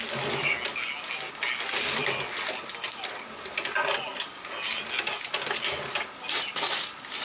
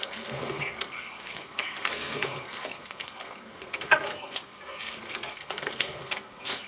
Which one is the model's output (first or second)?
second